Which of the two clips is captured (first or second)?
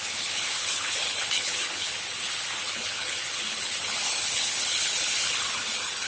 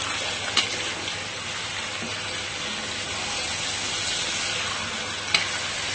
second